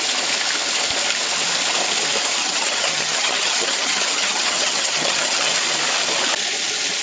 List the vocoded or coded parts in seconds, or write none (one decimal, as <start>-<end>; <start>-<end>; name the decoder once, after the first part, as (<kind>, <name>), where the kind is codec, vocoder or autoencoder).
2.4-5.5 (vocoder, HiFi-GAN)

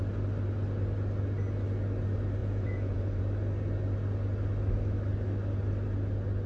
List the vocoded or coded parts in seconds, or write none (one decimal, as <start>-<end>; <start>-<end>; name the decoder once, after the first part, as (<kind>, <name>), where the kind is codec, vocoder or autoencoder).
2.4-3.2 (vocoder, Vocos)